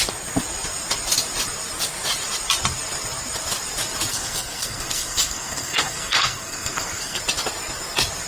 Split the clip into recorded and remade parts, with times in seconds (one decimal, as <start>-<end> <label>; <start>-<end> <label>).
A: 0.0-4.1 recorded; 4.1-7.2 remade; 7.2-8.3 recorded